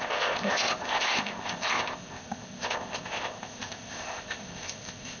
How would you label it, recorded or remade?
remade